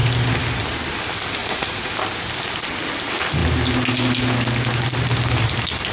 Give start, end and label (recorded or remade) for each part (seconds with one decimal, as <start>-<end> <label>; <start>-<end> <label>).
0.0-1.4 recorded; 1.4-1.9 remade; 1.9-5.9 recorded